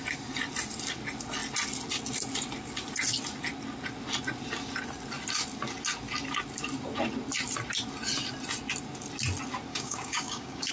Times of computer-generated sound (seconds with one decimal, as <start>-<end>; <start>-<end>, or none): 9.7-10.7